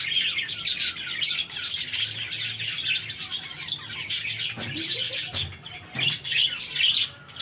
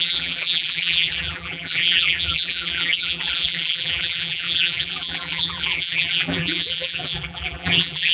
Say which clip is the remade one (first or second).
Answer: second